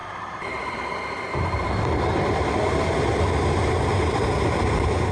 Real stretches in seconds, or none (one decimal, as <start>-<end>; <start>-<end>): 0.0-5.1